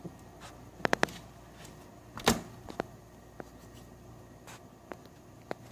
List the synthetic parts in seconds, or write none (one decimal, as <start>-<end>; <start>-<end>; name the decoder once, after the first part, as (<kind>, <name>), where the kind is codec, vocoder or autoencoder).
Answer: none